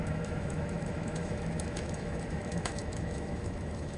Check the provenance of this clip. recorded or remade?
remade